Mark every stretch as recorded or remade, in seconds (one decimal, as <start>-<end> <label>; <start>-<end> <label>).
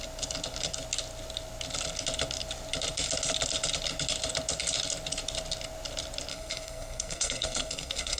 0.0-6.3 recorded; 6.3-8.2 remade